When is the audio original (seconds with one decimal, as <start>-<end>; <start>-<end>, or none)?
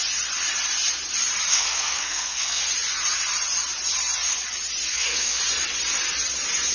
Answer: 0.0-1.5; 2.6-4.9; 5.4-6.7